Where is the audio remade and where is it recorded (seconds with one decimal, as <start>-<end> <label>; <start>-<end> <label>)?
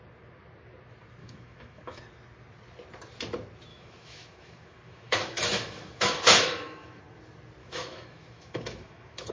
0.0-1.2 recorded; 1.2-2.0 remade; 2.0-3.7 recorded; 3.7-7.0 remade; 7.0-7.6 recorded; 7.6-9.3 remade